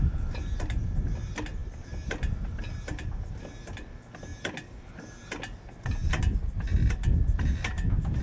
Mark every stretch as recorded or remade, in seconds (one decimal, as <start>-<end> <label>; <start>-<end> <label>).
0.0-8.2 recorded